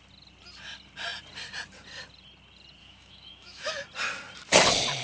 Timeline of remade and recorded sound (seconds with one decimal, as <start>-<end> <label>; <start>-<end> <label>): 0.0-2.8 recorded; 2.8-3.7 remade; 3.7-5.0 recorded